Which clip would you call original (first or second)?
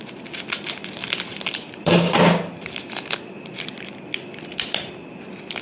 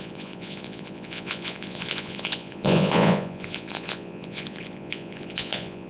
first